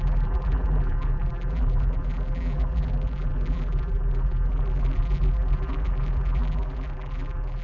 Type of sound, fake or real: fake